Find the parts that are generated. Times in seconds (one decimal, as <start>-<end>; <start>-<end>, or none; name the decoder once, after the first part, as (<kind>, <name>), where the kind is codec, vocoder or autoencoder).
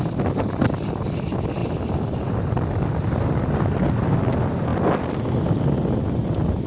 none